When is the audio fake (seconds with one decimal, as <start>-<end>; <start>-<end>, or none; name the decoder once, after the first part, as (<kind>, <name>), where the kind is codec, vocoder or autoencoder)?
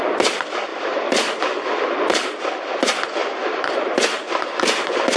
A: 0.7-1.4 (vocoder, BigVGAN v2); 3.2-5.2